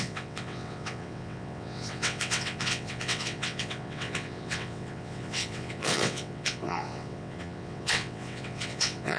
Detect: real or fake fake